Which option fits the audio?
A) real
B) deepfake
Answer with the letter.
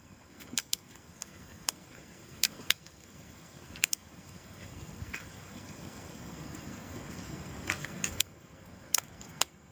B